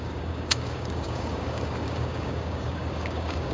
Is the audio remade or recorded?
remade